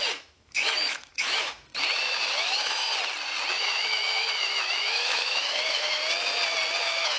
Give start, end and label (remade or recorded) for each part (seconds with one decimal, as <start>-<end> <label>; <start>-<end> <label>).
0.0-1.7 remade; 1.7-2.3 recorded; 2.3-2.9 remade; 2.9-3.5 recorded; 3.5-6.0 remade; 6.0-6.8 recorded; 6.8-7.2 remade